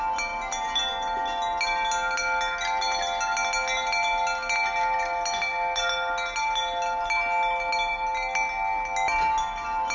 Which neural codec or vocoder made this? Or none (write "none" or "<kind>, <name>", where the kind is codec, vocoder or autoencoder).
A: none